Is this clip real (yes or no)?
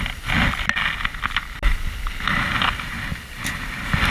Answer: yes